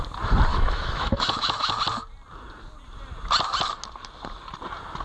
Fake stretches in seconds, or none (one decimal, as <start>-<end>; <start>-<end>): 0.5-1.7

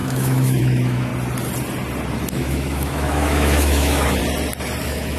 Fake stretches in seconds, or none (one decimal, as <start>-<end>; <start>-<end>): 0.0-1.1; 2.3-4.2; 4.8-5.2

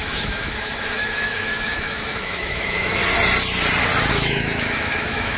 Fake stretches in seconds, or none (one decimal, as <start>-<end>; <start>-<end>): 0.0-3.0; 4.1-5.4